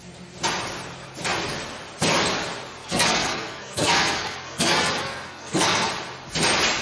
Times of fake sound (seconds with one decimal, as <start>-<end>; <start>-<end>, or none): 2.8-5.9